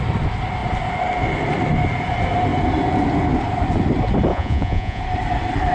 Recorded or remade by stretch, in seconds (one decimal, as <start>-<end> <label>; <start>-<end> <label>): 0.0-4.3 recorded; 4.3-5.0 remade; 5.0-5.7 recorded